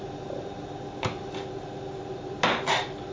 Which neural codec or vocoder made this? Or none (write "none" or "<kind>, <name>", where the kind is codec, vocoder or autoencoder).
none